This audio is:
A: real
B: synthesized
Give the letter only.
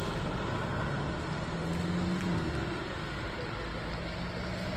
A